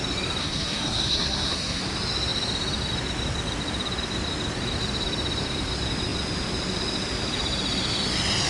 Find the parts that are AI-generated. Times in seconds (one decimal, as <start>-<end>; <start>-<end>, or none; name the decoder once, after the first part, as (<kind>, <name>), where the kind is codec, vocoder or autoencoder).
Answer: 0.4-1.8 (codec, SNAC)